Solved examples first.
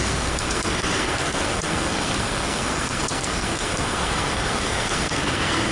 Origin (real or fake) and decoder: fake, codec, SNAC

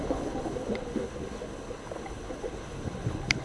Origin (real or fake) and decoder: fake, codec, HILCodec